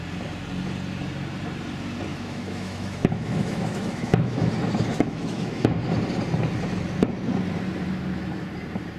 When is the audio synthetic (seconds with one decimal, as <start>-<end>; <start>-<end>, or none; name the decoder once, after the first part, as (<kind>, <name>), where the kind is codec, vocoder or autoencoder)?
2.1-4.5 (autoencoder, DAC-VAE); 4.9-5.8